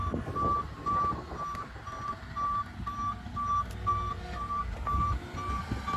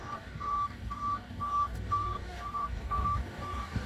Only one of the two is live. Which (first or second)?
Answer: first